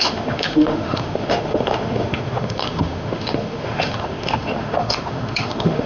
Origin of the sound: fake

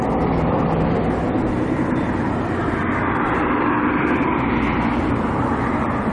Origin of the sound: real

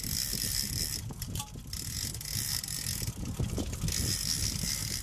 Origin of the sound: real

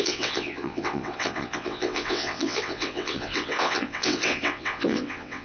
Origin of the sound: fake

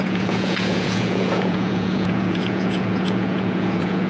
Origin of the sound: fake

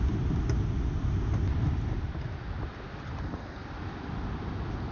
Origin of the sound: real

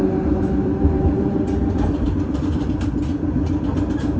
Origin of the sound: real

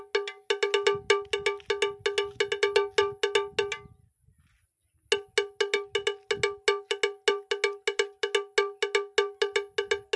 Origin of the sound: real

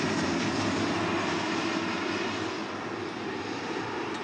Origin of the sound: real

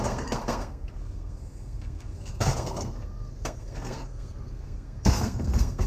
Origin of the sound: fake